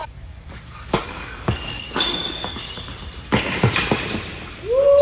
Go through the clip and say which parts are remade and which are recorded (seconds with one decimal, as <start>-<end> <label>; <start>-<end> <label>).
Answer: 0.0-3.0 remade; 3.0-5.0 recorded